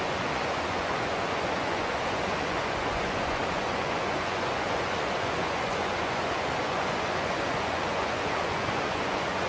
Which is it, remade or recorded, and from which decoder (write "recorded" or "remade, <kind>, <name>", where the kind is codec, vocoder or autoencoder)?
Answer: remade, vocoder, Vocos